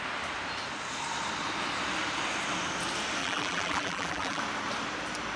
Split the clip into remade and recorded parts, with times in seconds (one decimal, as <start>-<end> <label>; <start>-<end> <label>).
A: 0.0-3.2 recorded; 3.2-4.4 remade; 4.4-5.4 recorded